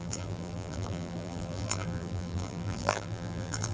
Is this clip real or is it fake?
fake